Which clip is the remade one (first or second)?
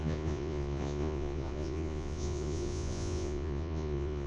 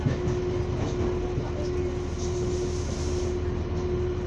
first